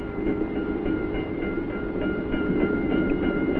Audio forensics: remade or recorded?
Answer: recorded